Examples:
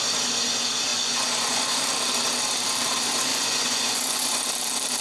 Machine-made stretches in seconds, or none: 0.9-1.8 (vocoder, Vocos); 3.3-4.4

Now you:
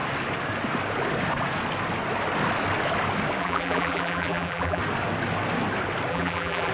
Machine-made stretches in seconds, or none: 3.4-4.8 (vocoder, BigVGAN v2); 6.1-6.7

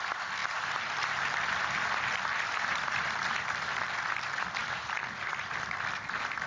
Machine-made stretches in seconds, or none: 0.4-0.9 (vocoder, BigVGAN v2); 2.7-3.2; 4.6-5.3